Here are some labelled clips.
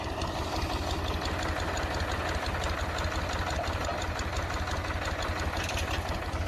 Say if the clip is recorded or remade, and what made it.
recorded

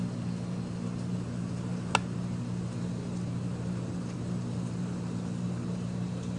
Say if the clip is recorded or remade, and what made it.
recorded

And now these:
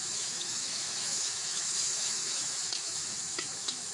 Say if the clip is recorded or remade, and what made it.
remade, autoencoder, DAC-VAE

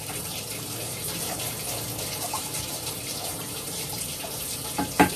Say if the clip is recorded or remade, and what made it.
remade, vocoder, BigVGAN v2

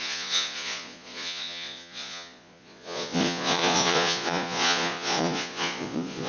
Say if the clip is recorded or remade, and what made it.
remade, vocoder, Vocos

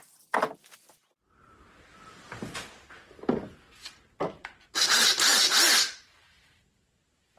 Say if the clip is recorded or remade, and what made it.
recorded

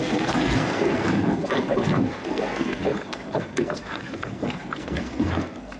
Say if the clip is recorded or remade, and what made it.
remade, codec, SNAC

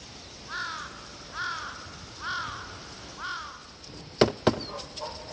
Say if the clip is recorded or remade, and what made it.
recorded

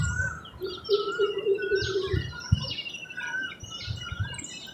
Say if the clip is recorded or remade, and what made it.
recorded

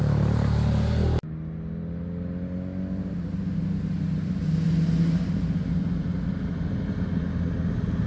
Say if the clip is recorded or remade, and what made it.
recorded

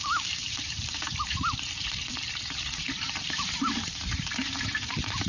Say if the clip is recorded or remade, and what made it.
remade, vocoder, BigVGAN v2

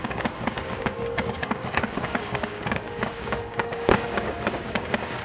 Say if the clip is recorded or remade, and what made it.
remade, codec, DAC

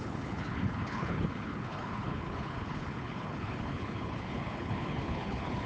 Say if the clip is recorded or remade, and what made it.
remade, codec, HILCodec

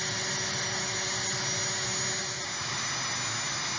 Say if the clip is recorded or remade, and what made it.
recorded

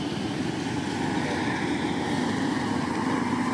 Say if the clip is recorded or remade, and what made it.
recorded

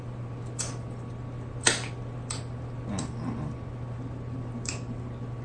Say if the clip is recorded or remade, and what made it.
recorded